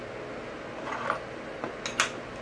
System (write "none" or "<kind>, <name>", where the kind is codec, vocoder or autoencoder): none